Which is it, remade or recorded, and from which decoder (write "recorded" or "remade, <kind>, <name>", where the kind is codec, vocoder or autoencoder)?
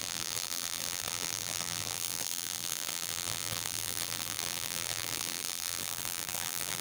remade, vocoder, BigVGAN v2